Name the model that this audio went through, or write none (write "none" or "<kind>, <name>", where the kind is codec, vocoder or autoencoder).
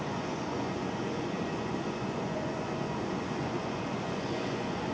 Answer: vocoder, Vocos